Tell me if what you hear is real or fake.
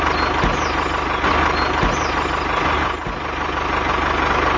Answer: real